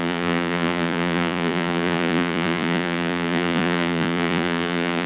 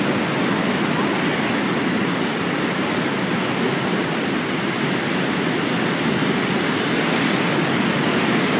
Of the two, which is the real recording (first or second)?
second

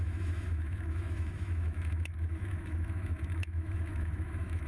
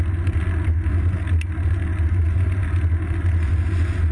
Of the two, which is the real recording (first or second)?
second